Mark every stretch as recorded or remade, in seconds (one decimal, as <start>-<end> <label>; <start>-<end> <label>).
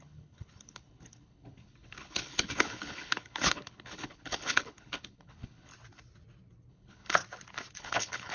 0.0-5.7 remade; 5.7-6.7 recorded; 6.7-7.2 remade; 7.2-7.8 recorded; 7.8-8.3 remade